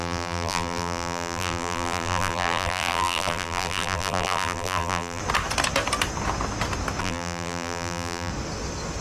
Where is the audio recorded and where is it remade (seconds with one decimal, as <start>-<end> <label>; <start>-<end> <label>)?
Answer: 0.0-5.2 remade; 5.2-7.0 recorded; 7.0-8.3 remade; 8.3-9.0 recorded